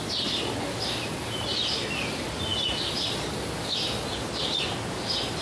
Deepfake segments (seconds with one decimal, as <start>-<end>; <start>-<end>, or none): none